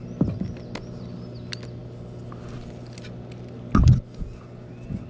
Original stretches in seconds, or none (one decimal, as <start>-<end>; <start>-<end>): 0.0-5.1